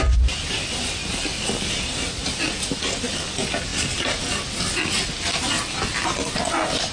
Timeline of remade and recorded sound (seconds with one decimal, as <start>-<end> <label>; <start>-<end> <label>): 0.0-6.9 recorded